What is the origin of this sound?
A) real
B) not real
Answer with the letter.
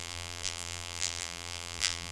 B